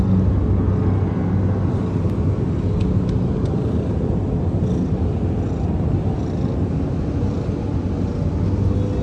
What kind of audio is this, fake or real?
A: real